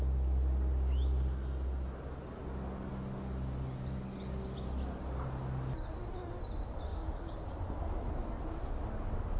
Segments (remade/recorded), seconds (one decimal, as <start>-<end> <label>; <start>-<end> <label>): 0.0-6.9 recorded; 6.9-7.5 remade; 7.5-9.4 recorded